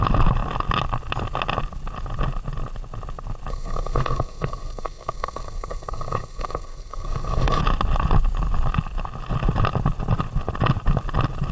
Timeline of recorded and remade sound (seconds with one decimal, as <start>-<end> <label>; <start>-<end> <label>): 0.0-3.5 recorded; 3.5-7.6 remade; 7.6-11.5 recorded